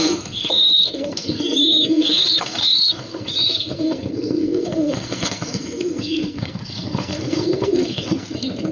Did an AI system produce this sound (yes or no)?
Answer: yes